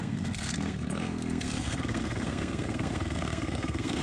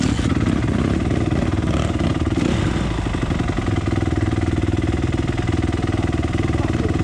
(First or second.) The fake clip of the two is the first